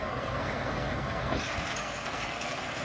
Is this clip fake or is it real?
fake